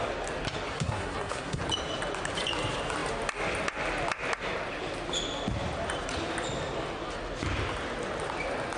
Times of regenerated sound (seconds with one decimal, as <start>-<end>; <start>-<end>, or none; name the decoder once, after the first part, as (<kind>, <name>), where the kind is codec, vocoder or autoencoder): 0.7-1.6 (codec, SNAC)